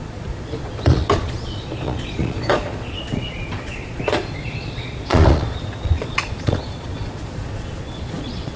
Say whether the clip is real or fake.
fake